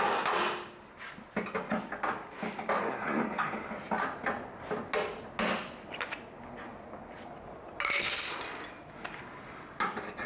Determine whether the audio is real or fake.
real